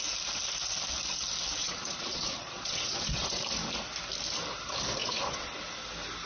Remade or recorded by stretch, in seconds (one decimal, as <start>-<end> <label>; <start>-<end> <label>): 0.0-1.6 recorded; 1.6-3.4 remade; 3.4-5.0 recorded; 5.0-5.6 remade; 5.6-6.3 recorded